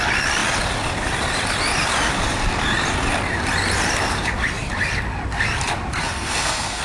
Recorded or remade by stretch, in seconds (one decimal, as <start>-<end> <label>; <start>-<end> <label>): 0.0-6.0 recorded; 6.0-6.8 remade